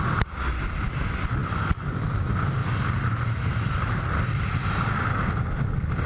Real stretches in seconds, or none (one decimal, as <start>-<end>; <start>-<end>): 0.0-1.4; 2.1-2.6; 4.0-6.1